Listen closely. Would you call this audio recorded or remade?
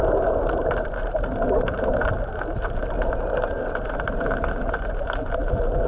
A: recorded